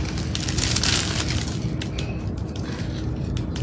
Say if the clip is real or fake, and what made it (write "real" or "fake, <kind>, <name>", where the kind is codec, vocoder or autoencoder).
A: real